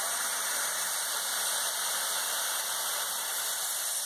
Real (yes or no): no